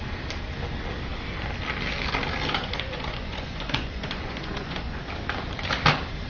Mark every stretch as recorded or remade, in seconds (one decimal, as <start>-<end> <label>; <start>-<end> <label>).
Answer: 0.0-2.6 recorded; 2.6-5.0 remade; 5.0-6.3 recorded